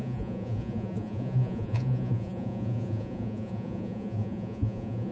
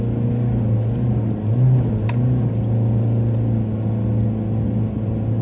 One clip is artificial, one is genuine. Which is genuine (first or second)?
second